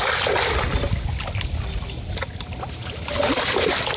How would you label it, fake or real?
real